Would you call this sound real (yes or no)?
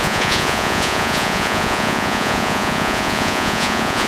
no